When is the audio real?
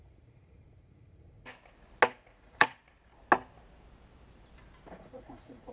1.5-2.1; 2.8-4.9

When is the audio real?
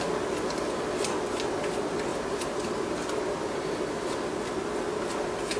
0.0-5.6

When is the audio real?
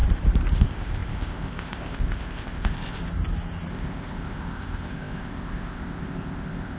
0.0-0.6; 3.0-3.7